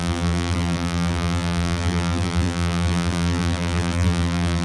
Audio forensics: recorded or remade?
remade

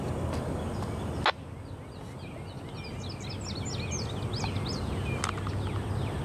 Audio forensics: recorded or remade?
recorded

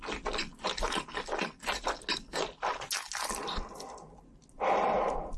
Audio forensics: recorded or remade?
recorded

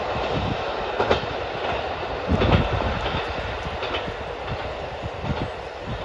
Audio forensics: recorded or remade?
recorded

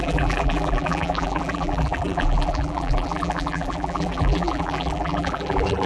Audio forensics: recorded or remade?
remade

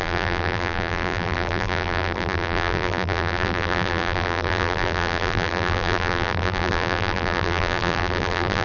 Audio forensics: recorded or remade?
remade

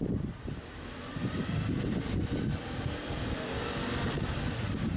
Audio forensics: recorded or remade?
remade